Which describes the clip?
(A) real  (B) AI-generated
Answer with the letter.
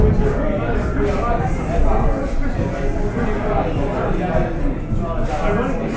A